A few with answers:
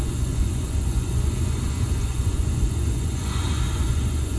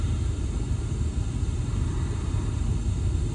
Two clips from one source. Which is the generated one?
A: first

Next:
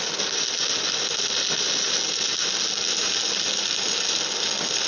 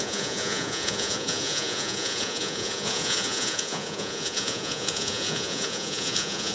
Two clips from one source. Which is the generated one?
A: second